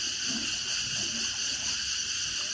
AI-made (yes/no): no